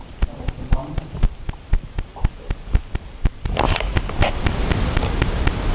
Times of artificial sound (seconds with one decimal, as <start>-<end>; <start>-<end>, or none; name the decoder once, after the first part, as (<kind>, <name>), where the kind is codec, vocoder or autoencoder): 0.0-2.1 (vocoder, BigVGAN v2); 4.4-5.7